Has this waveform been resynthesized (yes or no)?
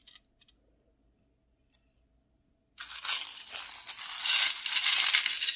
no